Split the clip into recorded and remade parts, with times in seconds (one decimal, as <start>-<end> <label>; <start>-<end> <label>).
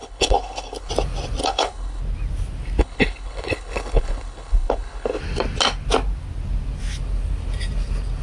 0.0-0.9 remade; 0.9-1.4 recorded; 1.4-2.0 remade; 2.0-2.8 recorded; 2.8-5.2 remade; 5.2-8.2 recorded